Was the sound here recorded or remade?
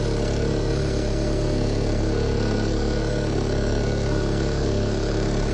remade